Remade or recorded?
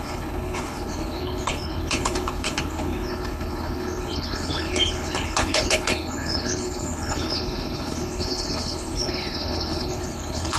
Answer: remade